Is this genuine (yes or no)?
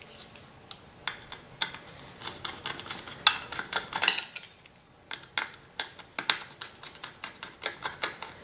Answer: yes